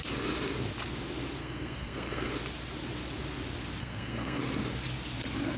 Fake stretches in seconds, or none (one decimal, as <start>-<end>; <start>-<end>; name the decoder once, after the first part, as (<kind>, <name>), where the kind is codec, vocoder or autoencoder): 1.4-2.3 (codec, SNAC); 3.8-4.4